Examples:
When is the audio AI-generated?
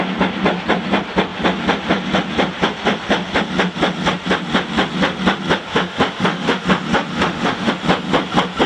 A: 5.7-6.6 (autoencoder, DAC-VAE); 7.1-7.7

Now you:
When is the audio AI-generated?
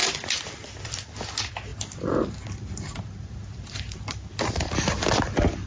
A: 0.0-1.1 (vocoder, BigVGAN v2)